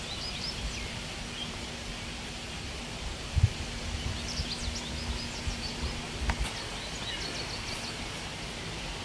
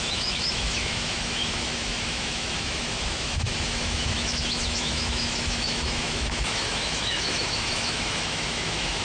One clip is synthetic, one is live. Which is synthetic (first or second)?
second